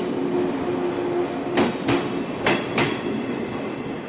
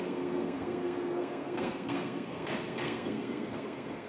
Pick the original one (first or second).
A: first